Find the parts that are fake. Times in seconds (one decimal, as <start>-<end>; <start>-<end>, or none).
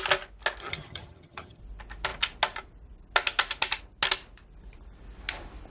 0.6-1.6